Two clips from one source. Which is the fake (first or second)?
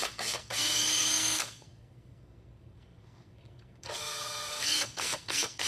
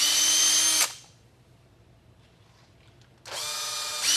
first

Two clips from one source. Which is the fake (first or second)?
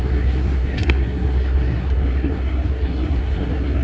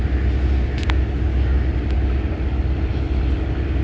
first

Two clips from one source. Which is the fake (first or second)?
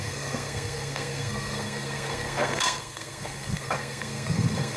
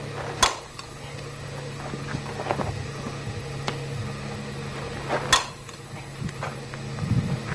first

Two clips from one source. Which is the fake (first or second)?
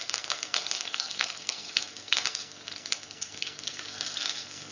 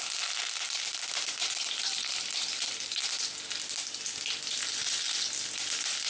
first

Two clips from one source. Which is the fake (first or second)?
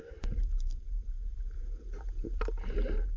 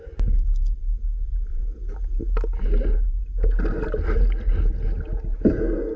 first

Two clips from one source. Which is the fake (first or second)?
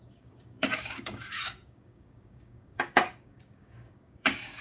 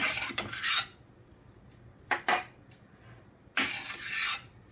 first